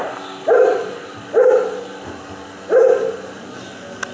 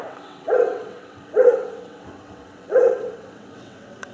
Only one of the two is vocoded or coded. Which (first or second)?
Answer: second